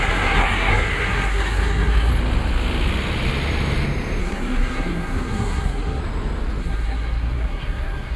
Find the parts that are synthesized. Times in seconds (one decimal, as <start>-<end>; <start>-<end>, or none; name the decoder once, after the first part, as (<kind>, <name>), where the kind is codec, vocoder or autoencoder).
0.0-2.1 (codec, SNAC); 4.2-6.0; 6.6-8.2